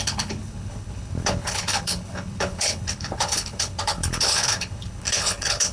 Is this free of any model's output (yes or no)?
no